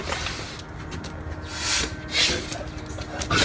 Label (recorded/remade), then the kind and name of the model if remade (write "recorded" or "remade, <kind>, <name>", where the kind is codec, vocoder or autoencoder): recorded